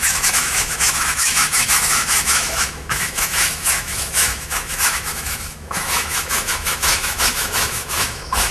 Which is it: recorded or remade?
remade